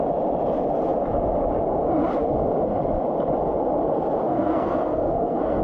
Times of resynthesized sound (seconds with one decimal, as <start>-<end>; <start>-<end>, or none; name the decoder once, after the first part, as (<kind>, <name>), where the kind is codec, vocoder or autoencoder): 4.2-5.6 (codec, SNAC)